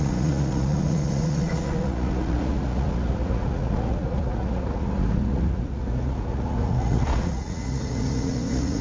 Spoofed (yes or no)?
yes